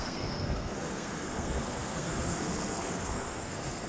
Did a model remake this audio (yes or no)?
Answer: yes